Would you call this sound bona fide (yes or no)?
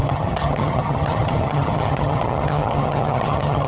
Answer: no